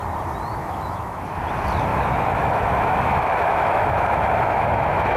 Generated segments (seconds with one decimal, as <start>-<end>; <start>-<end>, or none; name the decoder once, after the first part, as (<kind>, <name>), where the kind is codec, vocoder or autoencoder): 0.6-1.4 (autoencoder, DAC-VAE); 1.9-5.2